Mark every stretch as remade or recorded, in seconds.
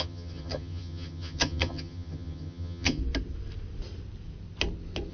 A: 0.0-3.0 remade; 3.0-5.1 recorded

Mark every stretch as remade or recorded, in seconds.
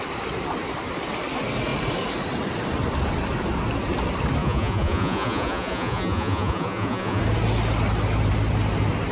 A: 0.0-4.4 recorded; 4.4-7.2 remade; 7.2-9.1 recorded